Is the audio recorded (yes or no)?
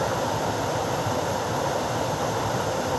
yes